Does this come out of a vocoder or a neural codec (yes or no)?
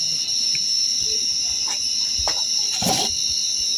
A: no